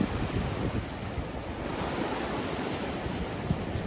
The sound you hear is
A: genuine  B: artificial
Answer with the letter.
A